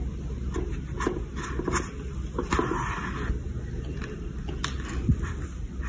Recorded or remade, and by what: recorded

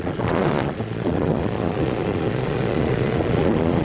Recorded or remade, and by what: remade, vocoder, Vocos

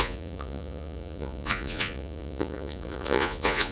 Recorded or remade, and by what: remade, vocoder, Vocos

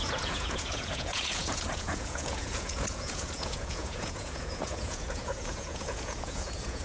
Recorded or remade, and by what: remade, vocoder, Vocos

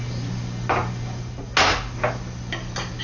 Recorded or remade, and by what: recorded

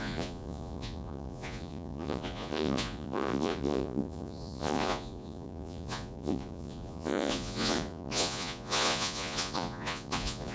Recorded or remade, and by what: remade, vocoder, Vocos